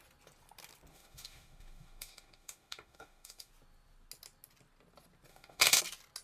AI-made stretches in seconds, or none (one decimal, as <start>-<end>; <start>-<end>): 0.9-3.5; 5.3-5.8